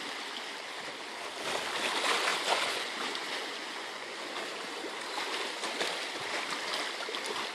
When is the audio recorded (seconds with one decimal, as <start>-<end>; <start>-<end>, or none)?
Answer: 0.0-2.3; 4.4-7.5